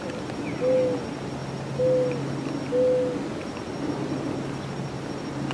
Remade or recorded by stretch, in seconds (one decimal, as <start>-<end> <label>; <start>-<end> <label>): 0.0-5.5 recorded